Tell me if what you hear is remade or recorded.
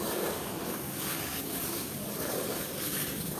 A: remade